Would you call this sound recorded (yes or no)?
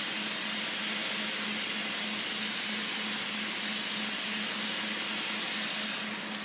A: yes